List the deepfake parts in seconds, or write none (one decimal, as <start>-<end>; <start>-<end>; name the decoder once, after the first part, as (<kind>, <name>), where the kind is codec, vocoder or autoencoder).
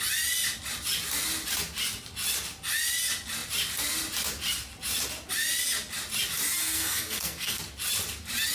6.6-7.6 (codec, SNAC)